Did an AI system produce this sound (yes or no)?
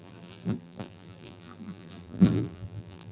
yes